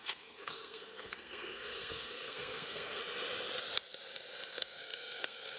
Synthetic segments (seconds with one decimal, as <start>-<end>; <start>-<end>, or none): 0.0-3.0; 4.5-5.6